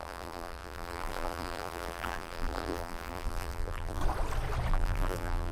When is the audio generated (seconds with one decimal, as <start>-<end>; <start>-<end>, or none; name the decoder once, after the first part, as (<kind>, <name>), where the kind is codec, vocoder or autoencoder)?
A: 0.0-4.0 (vocoder, BigVGAN v2); 4.7-5.5

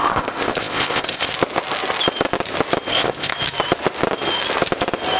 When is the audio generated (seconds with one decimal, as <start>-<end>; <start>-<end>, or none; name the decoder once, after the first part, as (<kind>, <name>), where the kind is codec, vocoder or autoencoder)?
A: 0.0-1.3 (codec, ZipCodec); 2.9-3.3